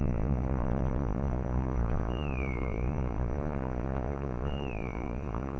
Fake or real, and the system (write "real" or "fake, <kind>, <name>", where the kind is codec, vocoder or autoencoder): fake, vocoder, Vocos